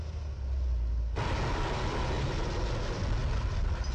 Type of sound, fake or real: real